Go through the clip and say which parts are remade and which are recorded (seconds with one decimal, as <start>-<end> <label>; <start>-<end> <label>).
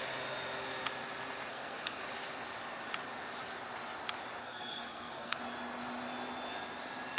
0.0-1.5 recorded; 1.5-2.0 remade; 2.0-4.4 recorded; 4.4-5.4 remade; 5.4-7.2 recorded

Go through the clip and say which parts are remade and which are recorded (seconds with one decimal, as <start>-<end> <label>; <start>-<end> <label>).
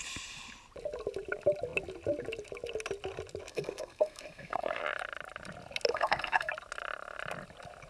0.0-3.5 recorded; 3.5-4.8 remade; 4.8-5.9 recorded; 5.9-6.5 remade; 6.5-7.9 recorded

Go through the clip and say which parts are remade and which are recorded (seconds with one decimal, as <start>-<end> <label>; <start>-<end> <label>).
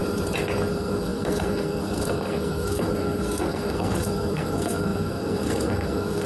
0.0-0.7 recorded; 0.7-6.3 remade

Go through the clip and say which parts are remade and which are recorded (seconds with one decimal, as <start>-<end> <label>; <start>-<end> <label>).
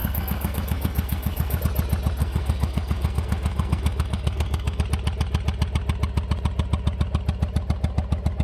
0.0-1.6 remade; 1.6-2.2 recorded; 2.2-4.8 remade; 4.8-8.4 recorded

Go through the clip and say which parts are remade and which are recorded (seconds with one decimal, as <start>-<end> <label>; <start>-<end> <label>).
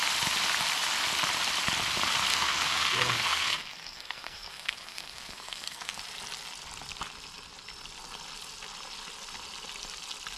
0.0-2.3 recorded; 2.3-6.0 remade; 6.0-10.4 recorded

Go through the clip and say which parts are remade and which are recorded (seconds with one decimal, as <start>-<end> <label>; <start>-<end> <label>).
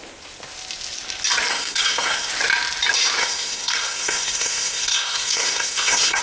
0.0-1.5 recorded; 1.5-2.3 remade; 2.3-3.2 recorded; 3.2-6.2 remade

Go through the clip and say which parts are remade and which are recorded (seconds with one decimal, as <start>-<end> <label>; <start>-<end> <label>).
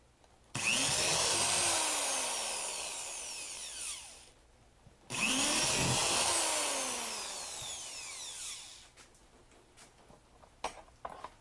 0.0-11.4 recorded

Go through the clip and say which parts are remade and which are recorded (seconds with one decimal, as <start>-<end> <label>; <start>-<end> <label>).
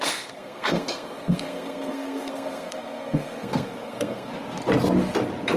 0.0-4.3 remade; 4.3-5.6 recorded